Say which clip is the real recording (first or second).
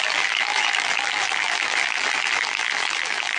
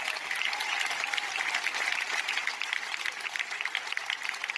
second